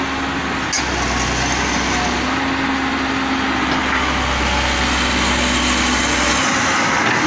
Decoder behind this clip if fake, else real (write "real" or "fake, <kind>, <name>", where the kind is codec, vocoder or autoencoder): real